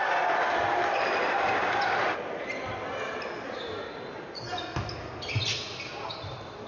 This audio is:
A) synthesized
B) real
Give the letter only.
B